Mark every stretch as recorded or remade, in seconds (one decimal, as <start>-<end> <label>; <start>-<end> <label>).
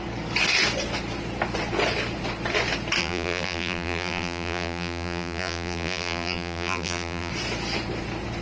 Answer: 0.0-3.0 recorded; 3.0-7.3 remade; 7.3-8.4 recorded